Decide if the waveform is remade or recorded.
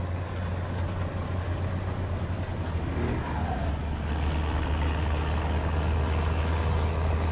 recorded